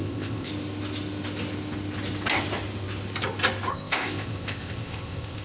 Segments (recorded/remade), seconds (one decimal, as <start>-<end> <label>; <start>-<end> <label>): 0.0-0.5 remade; 0.5-3.7 recorded; 3.7-5.4 remade